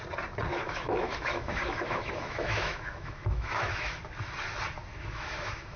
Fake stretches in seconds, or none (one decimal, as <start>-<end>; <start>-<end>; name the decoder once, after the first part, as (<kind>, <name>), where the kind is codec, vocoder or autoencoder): 0.5-4.0 (autoencoder, DAC-VAE); 4.9-5.8